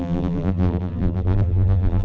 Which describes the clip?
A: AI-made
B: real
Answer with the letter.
A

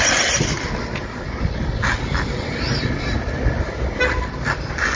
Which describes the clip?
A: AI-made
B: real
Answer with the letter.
B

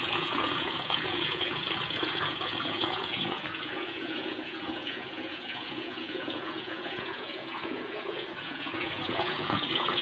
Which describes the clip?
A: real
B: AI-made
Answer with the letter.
B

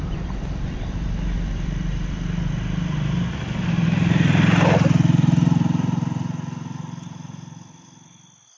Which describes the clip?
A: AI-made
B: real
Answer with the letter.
B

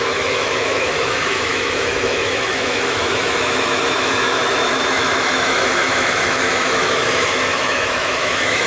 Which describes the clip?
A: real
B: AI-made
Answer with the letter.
B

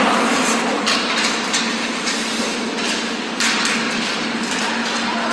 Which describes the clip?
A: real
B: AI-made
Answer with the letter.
A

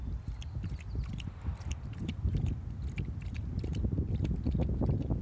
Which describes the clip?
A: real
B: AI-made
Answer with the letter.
A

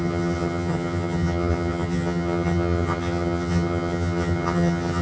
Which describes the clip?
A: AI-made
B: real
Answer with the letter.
A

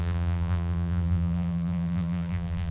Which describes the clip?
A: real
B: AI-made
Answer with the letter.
B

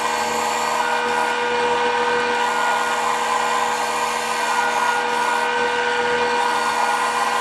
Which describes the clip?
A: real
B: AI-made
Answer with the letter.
A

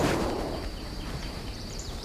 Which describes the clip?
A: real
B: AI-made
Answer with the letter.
B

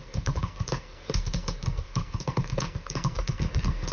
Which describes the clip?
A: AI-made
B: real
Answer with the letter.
A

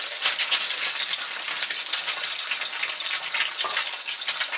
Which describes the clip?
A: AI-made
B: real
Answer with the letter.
B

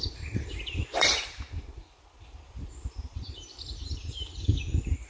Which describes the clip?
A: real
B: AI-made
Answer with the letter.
B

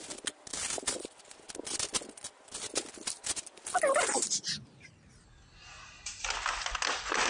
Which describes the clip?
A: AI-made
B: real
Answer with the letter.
B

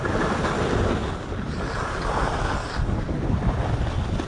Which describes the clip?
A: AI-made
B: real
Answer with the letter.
B